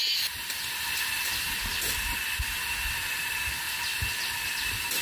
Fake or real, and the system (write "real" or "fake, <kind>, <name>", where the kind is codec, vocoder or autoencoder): real